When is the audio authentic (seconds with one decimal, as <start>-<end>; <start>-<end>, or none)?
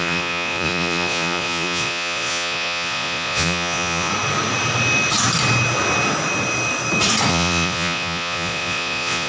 4.1-7.3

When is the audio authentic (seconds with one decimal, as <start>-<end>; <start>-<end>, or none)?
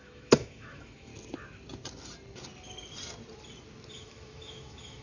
1.1-3.9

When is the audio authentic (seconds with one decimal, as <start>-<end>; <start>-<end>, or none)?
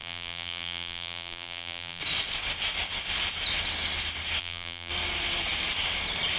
2.0-4.4; 4.9-6.4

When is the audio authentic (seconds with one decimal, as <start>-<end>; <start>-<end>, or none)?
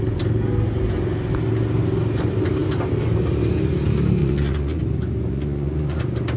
0.0-4.2; 4.8-5.3; 6.0-6.4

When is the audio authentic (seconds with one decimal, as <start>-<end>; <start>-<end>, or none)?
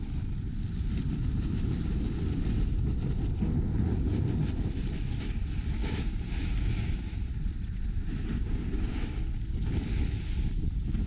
0.0-5.8; 7.0-8.4; 9.0-11.1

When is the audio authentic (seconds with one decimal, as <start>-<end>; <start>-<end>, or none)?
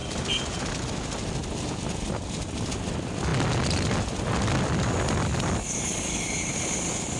0.0-7.2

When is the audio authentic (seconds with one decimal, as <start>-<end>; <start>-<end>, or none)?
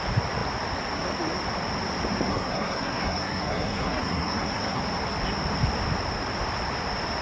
0.0-2.3; 4.8-7.2